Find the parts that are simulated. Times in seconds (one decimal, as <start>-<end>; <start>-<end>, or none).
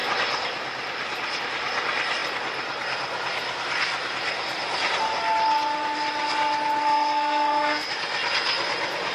6.8-7.9